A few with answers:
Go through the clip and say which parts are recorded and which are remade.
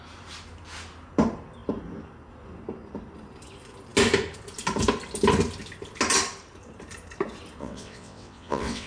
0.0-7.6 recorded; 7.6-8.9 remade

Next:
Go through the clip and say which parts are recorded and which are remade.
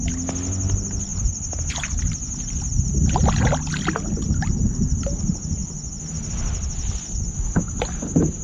0.0-8.4 recorded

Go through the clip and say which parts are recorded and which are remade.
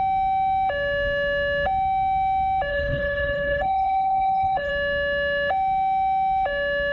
0.0-2.7 recorded; 2.7-4.7 remade; 4.7-6.9 recorded